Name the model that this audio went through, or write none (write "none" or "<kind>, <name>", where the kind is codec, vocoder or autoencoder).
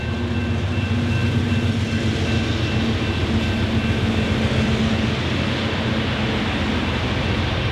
none